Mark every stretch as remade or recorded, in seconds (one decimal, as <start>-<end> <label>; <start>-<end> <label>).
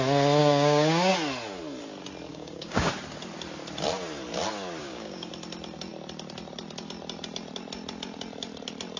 0.0-0.4 recorded; 0.4-1.1 remade; 1.1-2.3 recorded; 2.3-2.9 remade; 2.9-4.8 recorded; 4.8-5.3 remade; 5.3-9.0 recorded